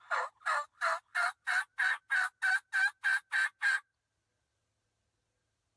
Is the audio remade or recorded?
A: recorded